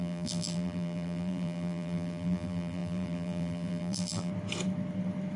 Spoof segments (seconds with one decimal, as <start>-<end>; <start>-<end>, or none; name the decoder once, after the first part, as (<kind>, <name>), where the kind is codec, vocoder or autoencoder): 0.0-4.3 (vocoder, BigVGAN v2)